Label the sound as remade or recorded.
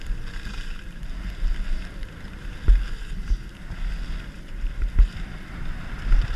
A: recorded